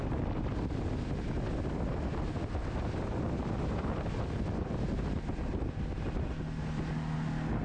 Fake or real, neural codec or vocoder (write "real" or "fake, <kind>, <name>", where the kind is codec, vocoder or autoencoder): real